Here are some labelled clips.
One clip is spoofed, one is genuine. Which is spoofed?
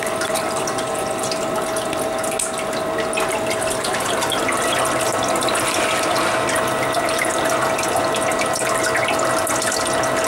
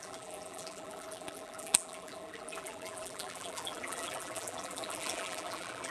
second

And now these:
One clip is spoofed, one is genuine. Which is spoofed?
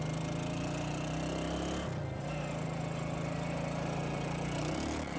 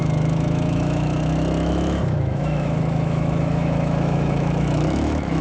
second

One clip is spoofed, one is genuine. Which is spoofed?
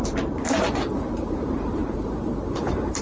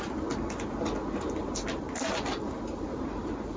first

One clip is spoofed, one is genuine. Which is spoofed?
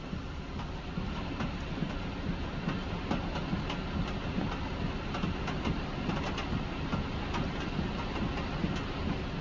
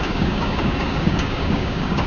second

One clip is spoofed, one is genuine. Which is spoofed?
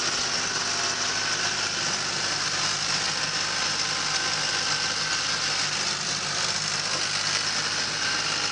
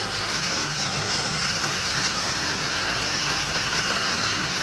second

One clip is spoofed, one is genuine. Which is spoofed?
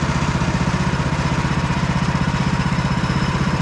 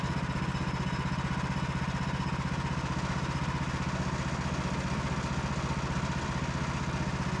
first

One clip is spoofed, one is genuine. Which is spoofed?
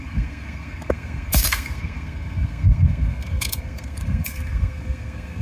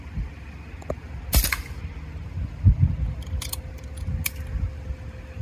first